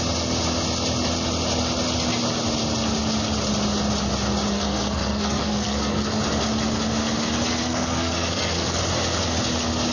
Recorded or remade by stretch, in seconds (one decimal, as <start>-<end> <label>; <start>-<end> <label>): 0.0-4.5 recorded; 4.5-6.2 remade; 6.2-7.5 recorded; 7.5-8.8 remade; 8.8-9.9 recorded